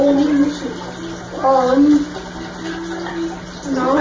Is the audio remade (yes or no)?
no